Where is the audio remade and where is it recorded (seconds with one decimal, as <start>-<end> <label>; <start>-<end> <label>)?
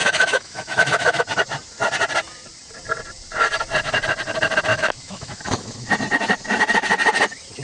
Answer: 0.0-1.2 remade; 1.2-4.7 recorded; 4.7-5.9 remade; 5.9-7.6 recorded